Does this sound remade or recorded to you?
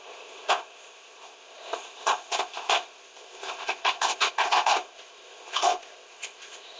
remade